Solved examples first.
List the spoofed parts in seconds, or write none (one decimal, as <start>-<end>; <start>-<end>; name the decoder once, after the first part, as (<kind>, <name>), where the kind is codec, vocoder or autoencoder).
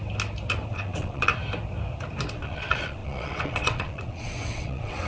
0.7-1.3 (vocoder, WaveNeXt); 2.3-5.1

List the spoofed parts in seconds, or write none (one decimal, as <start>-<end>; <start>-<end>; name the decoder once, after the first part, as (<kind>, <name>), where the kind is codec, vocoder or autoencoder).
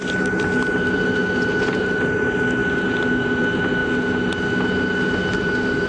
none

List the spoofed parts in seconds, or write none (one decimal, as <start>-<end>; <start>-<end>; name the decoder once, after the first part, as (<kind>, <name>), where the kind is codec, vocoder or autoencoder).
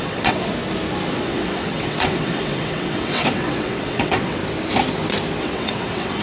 0.0-0.5 (vocoder, WaveNeXt); 1.1-4.4; 5.4-6.2